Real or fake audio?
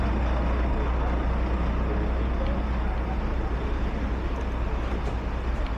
real